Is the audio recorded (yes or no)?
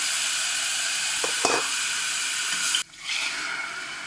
yes